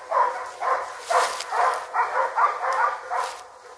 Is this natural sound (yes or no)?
yes